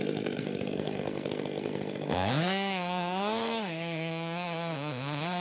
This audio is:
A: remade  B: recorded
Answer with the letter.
A